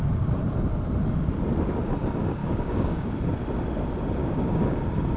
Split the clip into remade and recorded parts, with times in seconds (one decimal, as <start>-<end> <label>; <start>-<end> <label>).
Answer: 0.0-2.4 recorded; 2.4-3.1 remade; 3.1-4.2 recorded; 4.2-4.8 remade; 4.8-5.2 recorded